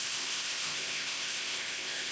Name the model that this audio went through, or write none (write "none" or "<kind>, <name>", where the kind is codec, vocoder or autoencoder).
codec, ZipCodec